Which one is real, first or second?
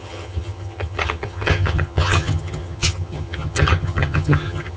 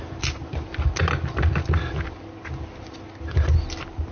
second